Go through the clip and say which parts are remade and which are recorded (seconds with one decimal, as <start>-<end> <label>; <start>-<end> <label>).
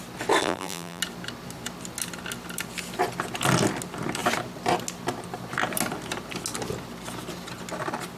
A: 0.0-0.4 recorded; 0.4-1.0 remade; 1.0-8.2 recorded